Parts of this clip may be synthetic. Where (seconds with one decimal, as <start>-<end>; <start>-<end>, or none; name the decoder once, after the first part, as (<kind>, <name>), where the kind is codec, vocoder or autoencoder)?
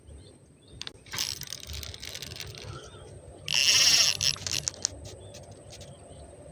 none